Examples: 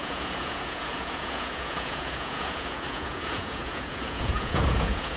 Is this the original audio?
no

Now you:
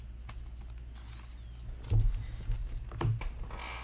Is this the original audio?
yes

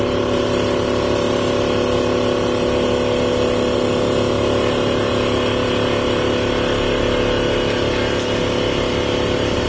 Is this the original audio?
yes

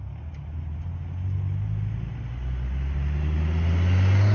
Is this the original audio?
yes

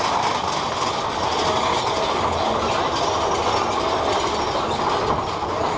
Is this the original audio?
yes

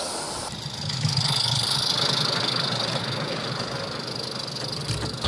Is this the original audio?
yes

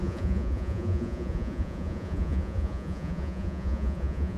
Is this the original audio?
no